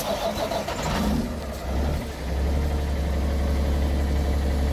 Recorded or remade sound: recorded